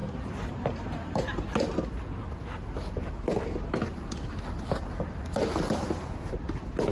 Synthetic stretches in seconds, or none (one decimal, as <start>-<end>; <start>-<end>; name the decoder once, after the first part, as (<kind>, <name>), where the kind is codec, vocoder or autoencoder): 0.0-1.4 (vocoder, BigVGAN v2)